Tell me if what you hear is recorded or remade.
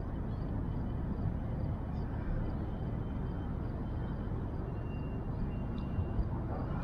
recorded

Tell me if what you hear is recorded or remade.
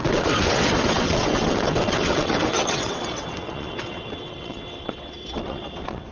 remade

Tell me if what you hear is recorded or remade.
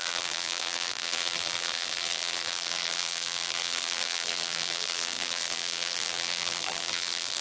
remade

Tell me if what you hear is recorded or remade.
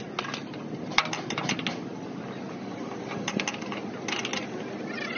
recorded